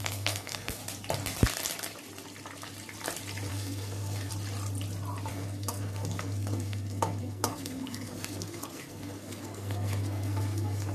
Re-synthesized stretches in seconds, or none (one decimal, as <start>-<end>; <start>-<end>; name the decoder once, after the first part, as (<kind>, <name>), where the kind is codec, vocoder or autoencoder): 0.0-0.8 (codec, SNAC); 3.5-4.3; 5.3-10.9